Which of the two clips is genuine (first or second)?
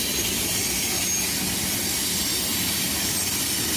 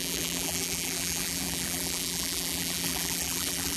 first